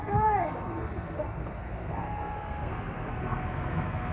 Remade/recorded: remade